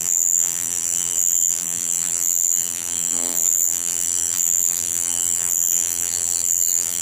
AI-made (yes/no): yes